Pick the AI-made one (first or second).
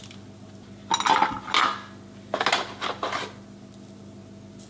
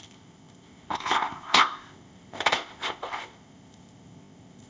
second